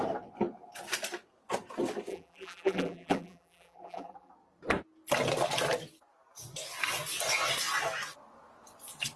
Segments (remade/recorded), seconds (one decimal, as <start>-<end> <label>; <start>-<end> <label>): 0.0-2.1 recorded; 2.1-4.3 remade; 4.3-9.2 recorded